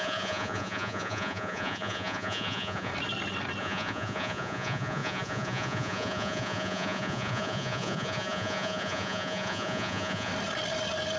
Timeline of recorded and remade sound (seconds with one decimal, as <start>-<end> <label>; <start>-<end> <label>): 0.0-2.9 remade; 2.9-3.6 recorded; 3.6-10.3 remade; 10.3-11.2 recorded